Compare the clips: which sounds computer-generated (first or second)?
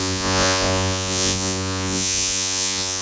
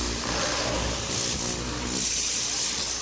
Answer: first